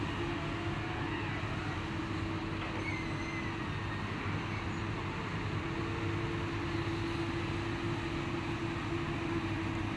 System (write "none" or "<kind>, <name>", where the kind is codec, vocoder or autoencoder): none